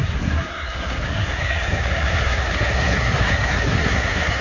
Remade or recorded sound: remade